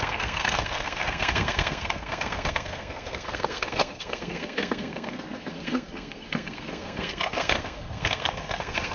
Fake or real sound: fake